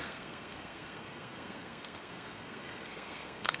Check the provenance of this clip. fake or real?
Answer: fake